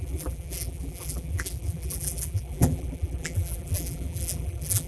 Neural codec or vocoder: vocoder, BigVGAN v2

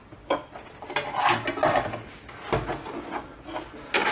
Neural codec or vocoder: none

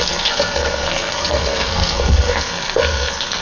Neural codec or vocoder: codec, SNAC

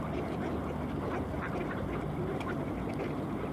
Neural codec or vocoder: none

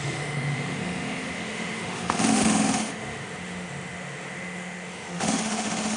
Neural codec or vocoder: autoencoder, DAC-VAE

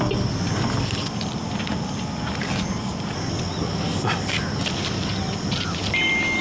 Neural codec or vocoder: none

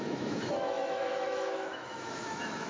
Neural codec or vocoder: autoencoder, DAC-VAE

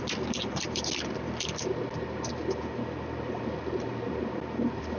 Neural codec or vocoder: none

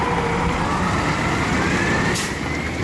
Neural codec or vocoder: none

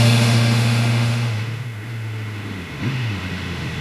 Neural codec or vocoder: autoencoder, DAC-VAE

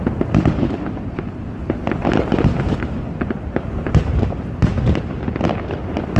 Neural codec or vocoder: none